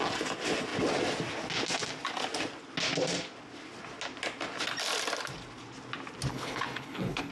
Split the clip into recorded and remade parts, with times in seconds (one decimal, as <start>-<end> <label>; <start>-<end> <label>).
0.0-6.3 recorded; 6.3-7.3 remade